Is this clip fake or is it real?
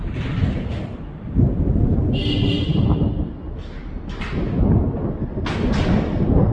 real